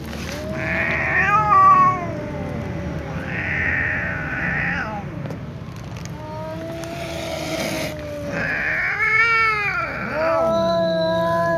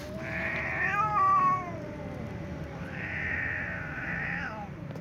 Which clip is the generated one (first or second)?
second